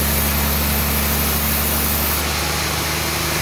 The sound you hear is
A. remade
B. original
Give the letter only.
B